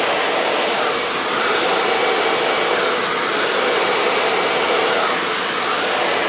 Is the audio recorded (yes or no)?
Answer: yes